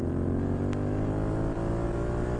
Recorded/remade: recorded